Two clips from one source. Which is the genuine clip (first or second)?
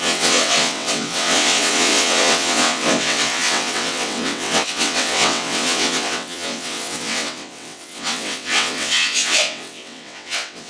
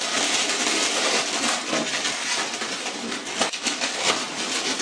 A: second